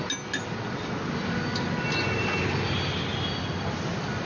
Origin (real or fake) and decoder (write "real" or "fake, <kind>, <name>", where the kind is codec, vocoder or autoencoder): real